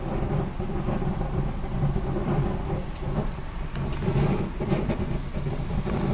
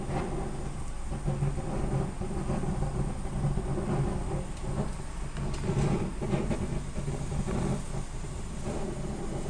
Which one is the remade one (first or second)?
first